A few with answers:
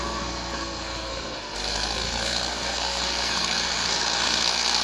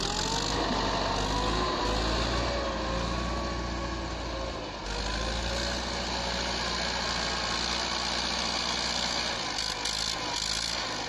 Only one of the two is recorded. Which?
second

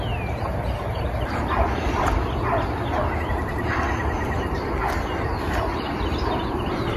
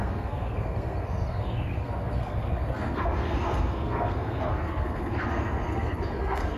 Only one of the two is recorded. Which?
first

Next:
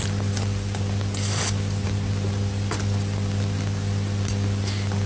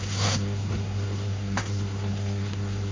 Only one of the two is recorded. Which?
first